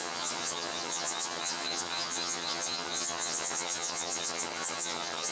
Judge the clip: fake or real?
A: fake